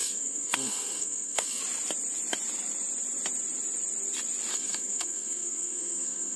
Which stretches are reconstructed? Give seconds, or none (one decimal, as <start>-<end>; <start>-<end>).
0.0-1.6; 4.5-6.4